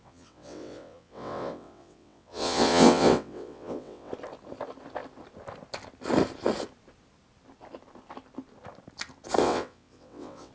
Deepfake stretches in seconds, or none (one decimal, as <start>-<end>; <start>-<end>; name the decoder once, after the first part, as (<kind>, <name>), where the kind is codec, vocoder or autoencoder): 0.0-4.1 (vocoder, WaveNeXt); 9.4-10.5